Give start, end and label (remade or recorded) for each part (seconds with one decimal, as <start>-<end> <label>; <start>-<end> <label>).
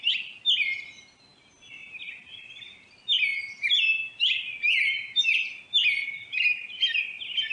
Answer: 0.0-7.5 recorded